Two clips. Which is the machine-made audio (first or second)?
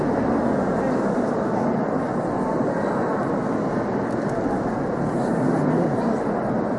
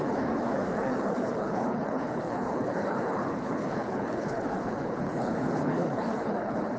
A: second